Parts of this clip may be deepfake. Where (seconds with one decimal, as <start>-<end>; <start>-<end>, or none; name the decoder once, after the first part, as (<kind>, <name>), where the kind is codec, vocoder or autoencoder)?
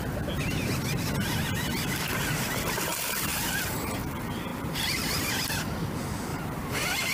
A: 3.3-3.9 (vocoder, BigVGAN v2); 4.5-5.3; 6.3-7.1